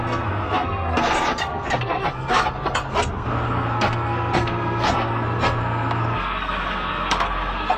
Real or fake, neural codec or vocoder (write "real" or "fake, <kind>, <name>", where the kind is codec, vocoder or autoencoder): fake, codec, SNAC